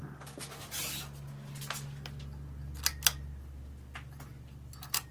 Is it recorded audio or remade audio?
recorded